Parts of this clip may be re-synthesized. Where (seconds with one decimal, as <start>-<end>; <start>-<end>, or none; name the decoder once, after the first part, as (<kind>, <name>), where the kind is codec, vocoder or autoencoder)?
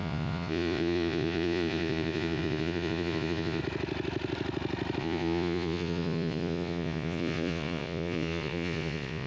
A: 0.0-3.6 (vocoder, Vocos); 5.0-9.3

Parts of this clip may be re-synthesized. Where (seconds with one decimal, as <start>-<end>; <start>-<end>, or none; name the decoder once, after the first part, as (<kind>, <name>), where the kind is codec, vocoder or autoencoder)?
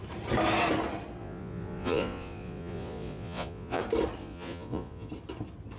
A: 1.2-3.8 (vocoder, Vocos); 4.2-5.1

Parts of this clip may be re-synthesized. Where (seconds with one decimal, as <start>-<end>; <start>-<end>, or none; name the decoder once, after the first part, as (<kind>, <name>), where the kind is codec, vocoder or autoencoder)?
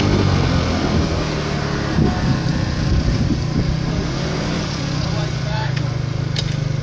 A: 4.0-6.2 (vocoder, Vocos)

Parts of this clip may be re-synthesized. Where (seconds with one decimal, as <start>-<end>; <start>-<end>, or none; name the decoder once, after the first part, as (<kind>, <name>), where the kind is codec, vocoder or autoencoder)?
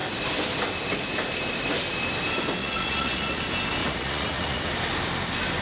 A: 2.6-3.4 (vocoder, Vocos); 3.8-4.6